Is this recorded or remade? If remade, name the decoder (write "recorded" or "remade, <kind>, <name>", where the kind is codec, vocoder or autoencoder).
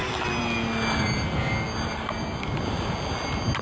recorded